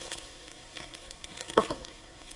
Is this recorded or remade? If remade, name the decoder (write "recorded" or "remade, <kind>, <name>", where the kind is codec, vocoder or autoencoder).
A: remade, codec, SNAC